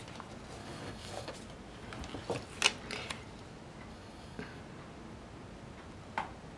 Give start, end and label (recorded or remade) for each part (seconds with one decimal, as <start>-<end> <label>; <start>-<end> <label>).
0.0-0.6 recorded; 0.6-1.3 remade; 1.3-3.9 recorded; 3.9-4.6 remade; 4.6-6.6 recorded